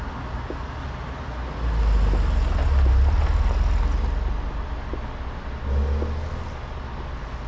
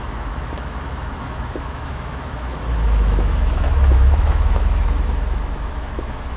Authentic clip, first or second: first